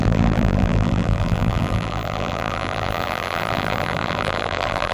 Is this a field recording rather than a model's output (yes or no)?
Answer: no